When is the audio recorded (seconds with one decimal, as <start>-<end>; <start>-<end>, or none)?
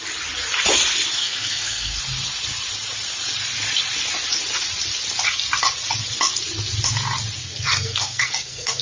0.0-1.2; 2.0-7.4